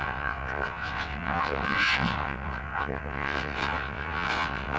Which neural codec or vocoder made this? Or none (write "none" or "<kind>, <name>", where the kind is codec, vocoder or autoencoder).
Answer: vocoder, WaveNeXt